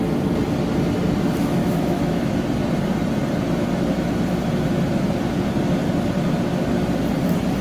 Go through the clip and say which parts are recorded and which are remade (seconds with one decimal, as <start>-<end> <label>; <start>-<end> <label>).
0.0-1.6 recorded; 1.6-2.2 remade; 2.2-7.6 recorded